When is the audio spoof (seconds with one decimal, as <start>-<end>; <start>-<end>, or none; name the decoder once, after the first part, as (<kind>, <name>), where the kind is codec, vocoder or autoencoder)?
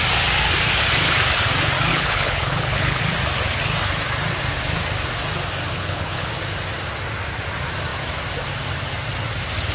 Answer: 1.9-3.0 (codec, HILCodec); 5.7-6.3